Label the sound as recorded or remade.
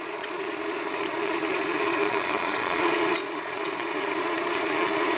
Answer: remade